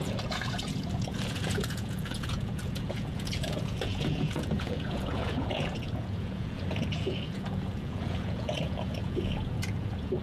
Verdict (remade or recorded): remade